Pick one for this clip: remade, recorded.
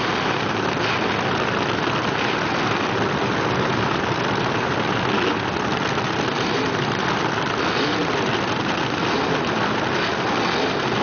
recorded